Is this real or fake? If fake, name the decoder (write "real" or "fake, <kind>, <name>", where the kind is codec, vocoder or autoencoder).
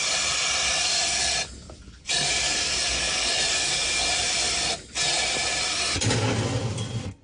real